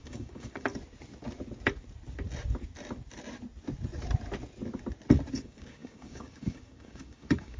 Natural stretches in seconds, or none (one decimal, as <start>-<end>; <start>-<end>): 0.7-5.3